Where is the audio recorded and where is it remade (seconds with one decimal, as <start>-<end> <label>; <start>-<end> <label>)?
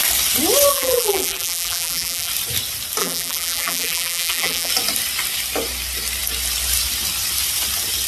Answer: 0.0-0.7 recorded; 0.7-2.3 remade; 2.3-3.0 recorded; 3.0-4.7 remade; 4.7-8.1 recorded